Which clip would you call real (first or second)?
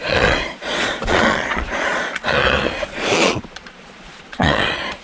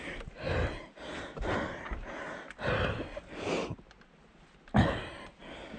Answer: second